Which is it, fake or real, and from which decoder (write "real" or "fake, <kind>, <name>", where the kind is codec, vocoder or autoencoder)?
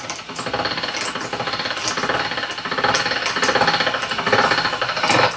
real